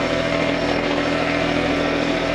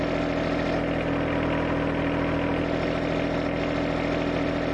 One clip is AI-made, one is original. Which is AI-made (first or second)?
first